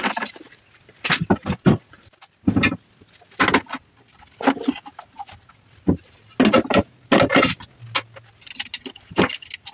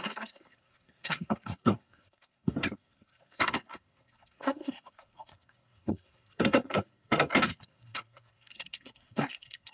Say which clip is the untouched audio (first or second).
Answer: first